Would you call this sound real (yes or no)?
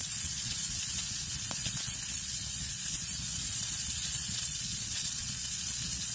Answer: no